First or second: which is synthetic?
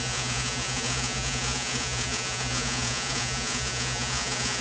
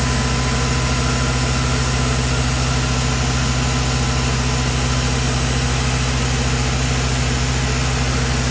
first